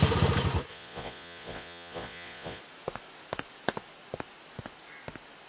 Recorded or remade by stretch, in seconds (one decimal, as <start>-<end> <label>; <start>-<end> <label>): 0.0-0.7 recorded; 0.7-2.6 remade; 2.6-5.5 recorded